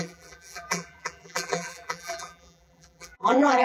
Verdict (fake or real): fake